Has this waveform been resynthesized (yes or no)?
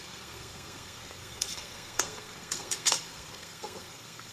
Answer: yes